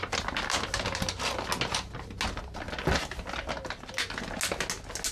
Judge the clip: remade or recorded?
recorded